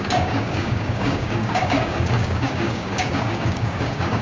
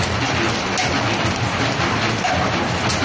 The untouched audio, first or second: second